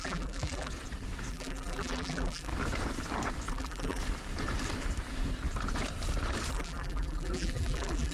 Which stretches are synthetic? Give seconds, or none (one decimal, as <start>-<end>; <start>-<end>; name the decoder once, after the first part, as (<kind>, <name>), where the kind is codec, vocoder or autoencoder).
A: 0.0-0.7 (vocoder, BigVGAN v2); 1.3-2.5; 3.5-4.0; 6.5-8.1

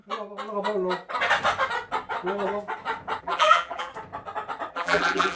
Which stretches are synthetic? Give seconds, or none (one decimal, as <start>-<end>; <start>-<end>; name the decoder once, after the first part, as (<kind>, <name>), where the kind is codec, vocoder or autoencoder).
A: 3.2-3.9 (vocoder, BigVGAN v2); 4.7-5.4

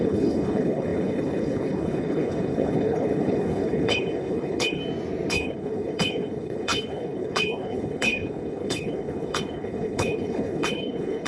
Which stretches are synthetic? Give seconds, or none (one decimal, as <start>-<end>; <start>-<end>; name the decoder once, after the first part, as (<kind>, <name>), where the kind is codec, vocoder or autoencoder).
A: 0.0-4.8 (codec, HILCodec); 5.3-11.3

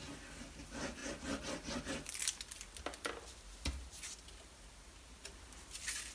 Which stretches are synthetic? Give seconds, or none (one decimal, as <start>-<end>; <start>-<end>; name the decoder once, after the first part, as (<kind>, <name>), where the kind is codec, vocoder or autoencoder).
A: none

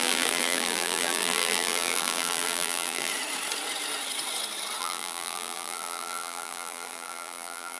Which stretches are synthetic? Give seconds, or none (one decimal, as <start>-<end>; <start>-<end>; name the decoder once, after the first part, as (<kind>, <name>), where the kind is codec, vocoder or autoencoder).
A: 0.0-3.1 (vocoder, BigVGAN v2); 4.8-7.8